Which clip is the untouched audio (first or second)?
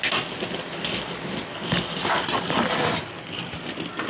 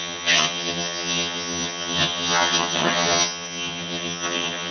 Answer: first